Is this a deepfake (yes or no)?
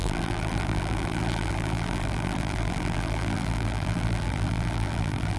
yes